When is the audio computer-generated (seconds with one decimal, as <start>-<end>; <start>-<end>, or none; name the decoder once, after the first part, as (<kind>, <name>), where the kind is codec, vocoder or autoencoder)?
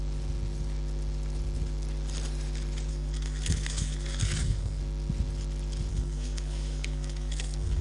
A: 2.9-4.8 (codec, SNAC); 5.9-7.8